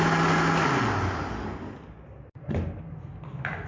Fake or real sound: real